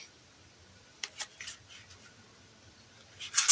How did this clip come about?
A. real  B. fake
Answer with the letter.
A